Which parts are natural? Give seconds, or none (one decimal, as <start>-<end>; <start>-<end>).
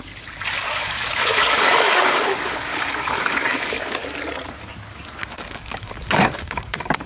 4.0-5.3